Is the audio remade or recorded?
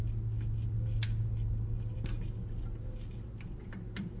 recorded